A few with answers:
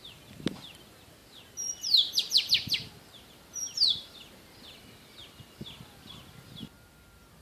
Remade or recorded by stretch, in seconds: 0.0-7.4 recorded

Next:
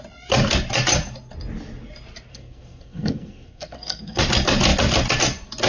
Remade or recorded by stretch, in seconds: 0.0-2.3 recorded; 2.3-4.2 remade; 4.2-5.7 recorded

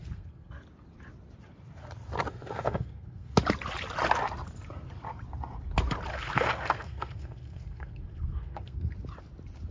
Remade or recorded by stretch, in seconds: 0.0-0.5 remade; 0.5-2.3 recorded; 2.3-3.3 remade; 3.3-6.1 recorded; 6.1-8.9 remade; 8.9-9.7 recorded

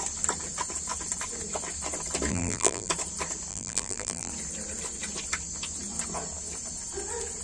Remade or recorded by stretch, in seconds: 0.0-2.3 recorded; 2.3-2.9 remade; 2.9-3.5 recorded; 3.5-4.3 remade; 4.3-7.4 recorded

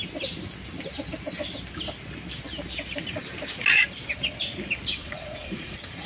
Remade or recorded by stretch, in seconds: 0.0-5.0 recorded; 5.0-6.1 remade

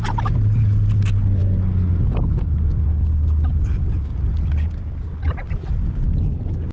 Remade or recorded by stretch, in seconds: 0.0-6.7 recorded